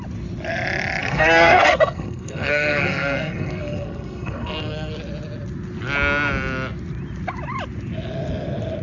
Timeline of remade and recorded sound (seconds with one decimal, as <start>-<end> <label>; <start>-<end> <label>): 0.0-1.0 recorded; 1.0-4.9 remade; 4.9-8.8 recorded